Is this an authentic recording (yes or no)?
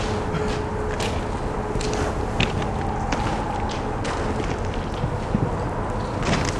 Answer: yes